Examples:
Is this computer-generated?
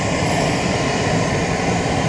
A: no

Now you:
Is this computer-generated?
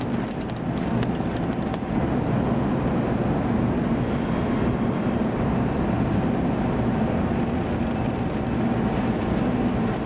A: no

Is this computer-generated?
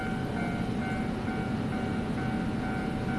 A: no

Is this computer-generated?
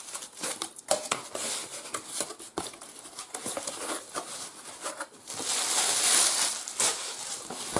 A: yes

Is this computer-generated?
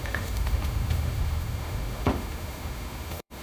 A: yes